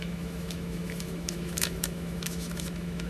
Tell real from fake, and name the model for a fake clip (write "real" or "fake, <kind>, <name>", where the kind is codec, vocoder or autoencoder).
fake, autoencoder, DAC-VAE